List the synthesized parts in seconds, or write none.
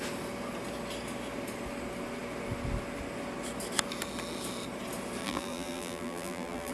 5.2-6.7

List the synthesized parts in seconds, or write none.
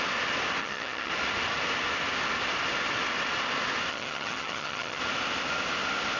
0.6-1.1; 3.9-5.0